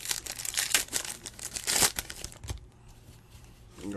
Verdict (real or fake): fake